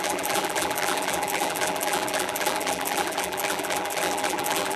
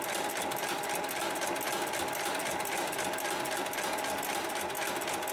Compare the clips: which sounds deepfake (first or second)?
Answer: first